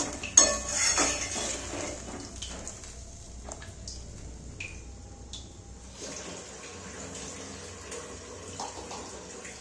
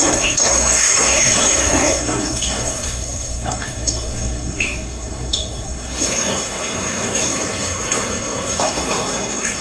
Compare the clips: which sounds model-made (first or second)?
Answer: second